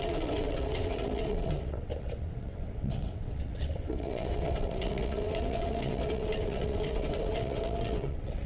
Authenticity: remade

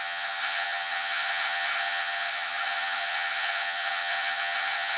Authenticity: remade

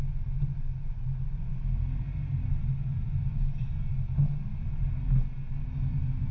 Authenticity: recorded